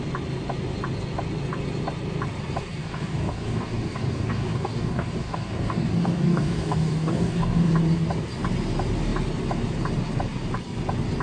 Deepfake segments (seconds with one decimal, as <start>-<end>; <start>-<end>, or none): 2.8-7.7